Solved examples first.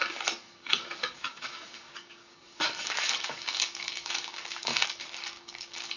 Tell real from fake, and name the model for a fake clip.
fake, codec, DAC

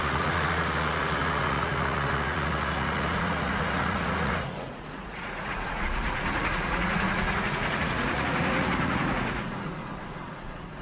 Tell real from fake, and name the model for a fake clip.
fake, vocoder, Vocos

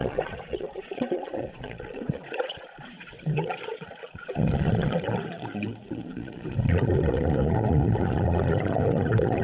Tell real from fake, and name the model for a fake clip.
fake, vocoder, Vocos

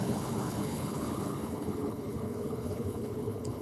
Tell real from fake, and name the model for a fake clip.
fake, codec, HILCodec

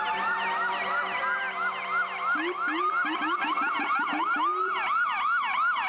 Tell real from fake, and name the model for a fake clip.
real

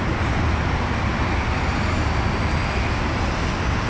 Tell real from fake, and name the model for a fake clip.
real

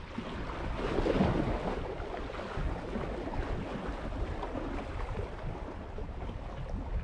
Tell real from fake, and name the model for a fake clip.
real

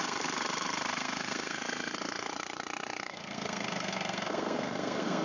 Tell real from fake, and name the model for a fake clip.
fake, codec, SNAC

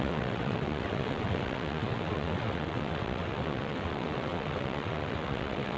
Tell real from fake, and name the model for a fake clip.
fake, vocoder, WaveNeXt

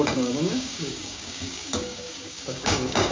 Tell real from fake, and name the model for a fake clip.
fake, codec, DAC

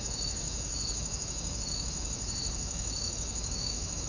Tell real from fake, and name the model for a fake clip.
fake, autoencoder, DAC-VAE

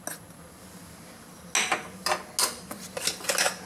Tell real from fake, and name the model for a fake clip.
real